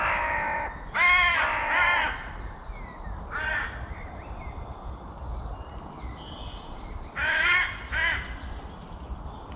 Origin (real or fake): real